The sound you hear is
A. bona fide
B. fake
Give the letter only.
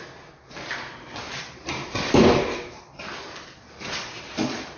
A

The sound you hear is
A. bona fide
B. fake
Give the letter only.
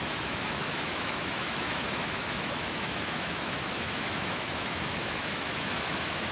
B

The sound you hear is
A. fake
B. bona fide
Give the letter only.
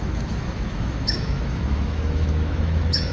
A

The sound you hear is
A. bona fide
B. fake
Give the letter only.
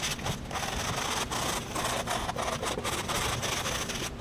A